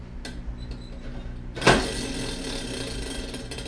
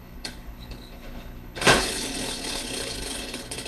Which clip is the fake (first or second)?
second